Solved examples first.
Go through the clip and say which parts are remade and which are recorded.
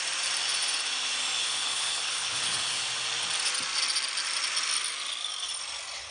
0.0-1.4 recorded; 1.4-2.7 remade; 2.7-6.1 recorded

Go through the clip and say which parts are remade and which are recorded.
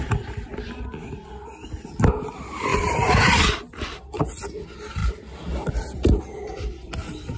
0.0-2.7 recorded; 2.7-4.3 remade; 4.3-5.0 recorded; 5.0-6.2 remade; 6.2-7.4 recorded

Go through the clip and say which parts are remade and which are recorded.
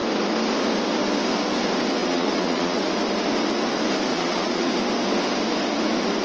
0.0-2.0 recorded; 2.0-2.9 remade; 2.9-4.1 recorded; 4.1-4.7 remade; 4.7-6.2 recorded